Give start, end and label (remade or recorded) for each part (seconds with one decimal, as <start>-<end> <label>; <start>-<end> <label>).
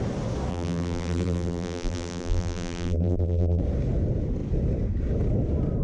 0.0-0.5 recorded; 0.5-3.6 remade; 3.6-5.8 recorded